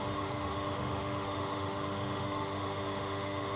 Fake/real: fake